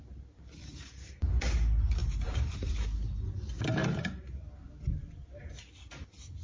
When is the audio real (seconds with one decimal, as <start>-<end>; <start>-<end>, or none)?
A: 0.0-0.6; 1.1-2.0; 2.7-6.4